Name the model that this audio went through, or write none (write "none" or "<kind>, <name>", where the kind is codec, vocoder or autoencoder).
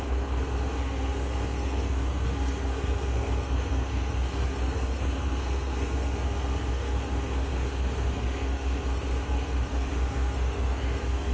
codec, SNAC